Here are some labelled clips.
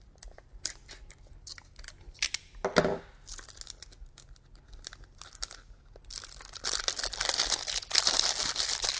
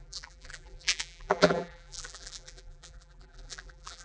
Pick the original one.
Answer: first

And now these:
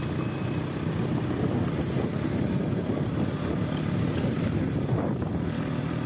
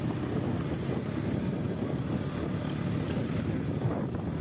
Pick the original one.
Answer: second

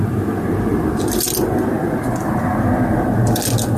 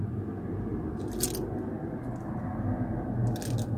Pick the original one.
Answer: second